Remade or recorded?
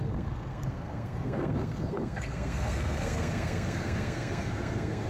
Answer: remade